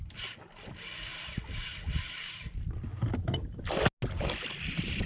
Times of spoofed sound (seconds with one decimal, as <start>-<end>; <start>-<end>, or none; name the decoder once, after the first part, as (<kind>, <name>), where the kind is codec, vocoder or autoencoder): none